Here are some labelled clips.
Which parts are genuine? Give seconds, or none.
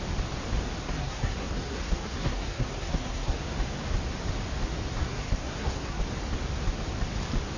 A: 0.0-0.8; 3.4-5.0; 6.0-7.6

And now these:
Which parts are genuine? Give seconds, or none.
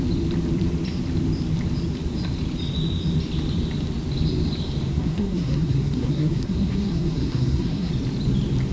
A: 0.0-4.9; 7.9-8.7